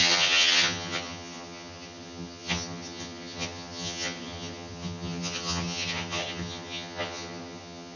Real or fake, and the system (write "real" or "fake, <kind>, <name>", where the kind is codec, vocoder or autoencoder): fake, vocoder, HiFi-GAN